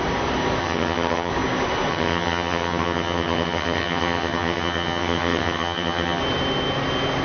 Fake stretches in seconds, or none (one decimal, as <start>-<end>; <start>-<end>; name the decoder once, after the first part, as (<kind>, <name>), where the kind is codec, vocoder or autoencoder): 0.6-1.3 (vocoder, HiFi-GAN); 1.9-6.2